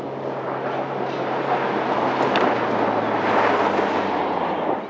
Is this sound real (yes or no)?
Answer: yes